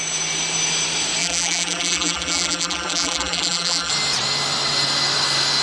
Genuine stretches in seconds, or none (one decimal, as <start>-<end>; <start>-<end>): 0.0-1.2; 3.9-5.6